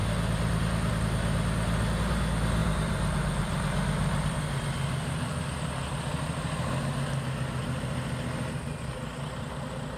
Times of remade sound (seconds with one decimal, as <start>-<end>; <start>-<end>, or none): 2.6-6.0